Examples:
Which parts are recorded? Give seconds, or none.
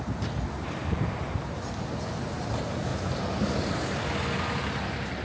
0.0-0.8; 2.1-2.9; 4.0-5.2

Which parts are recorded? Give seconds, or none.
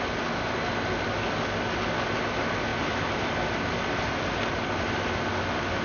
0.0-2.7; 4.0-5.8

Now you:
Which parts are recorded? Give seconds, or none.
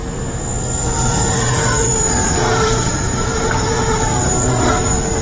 0.0-0.8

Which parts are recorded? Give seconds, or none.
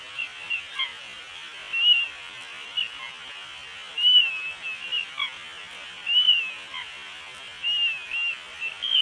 0.0-9.0